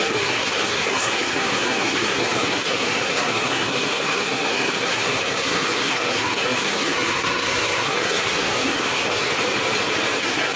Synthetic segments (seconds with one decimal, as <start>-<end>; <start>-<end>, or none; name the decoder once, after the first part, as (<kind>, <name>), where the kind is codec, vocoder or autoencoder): 0.0-9.3 (codec, SNAC); 10.2-10.6